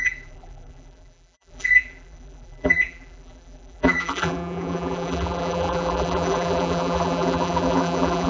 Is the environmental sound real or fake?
fake